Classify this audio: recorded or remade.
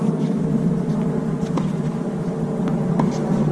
recorded